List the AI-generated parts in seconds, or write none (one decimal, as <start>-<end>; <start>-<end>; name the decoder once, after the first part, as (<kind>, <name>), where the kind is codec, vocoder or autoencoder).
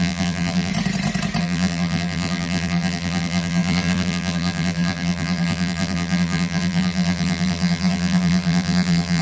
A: 0.0-0.7 (vocoder, BigVGAN v2); 1.4-9.2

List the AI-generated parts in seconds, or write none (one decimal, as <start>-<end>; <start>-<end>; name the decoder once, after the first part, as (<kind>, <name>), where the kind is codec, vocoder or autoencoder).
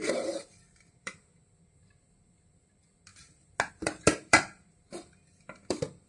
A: 0.0-3.1 (vocoder, BigVGAN v2); 3.7-6.1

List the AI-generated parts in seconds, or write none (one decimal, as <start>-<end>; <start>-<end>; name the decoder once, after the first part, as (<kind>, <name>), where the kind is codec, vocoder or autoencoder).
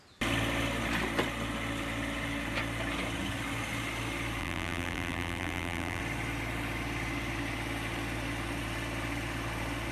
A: 4.4-6.0 (vocoder, BigVGAN v2)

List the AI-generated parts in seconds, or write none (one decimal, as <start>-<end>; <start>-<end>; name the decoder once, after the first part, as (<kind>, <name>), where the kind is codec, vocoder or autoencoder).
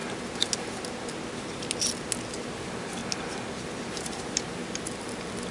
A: 2.4-3.0 (vocoder, BigVGAN v2); 3.9-4.6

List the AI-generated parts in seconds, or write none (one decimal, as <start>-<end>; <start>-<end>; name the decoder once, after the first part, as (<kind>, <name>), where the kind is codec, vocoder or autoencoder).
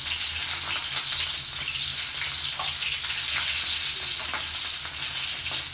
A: none